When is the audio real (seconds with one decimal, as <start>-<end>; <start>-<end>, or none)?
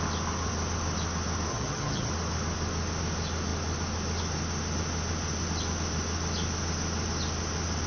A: 0.0-1.5; 2.1-7.9